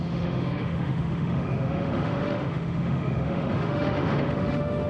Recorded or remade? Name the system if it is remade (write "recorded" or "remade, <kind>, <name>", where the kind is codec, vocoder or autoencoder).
remade, autoencoder, DAC-VAE